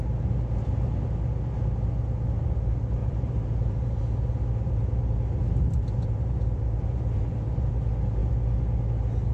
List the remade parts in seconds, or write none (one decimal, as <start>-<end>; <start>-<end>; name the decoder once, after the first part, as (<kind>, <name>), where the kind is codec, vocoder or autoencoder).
3.0-7.7 (vocoder, BigVGAN v2)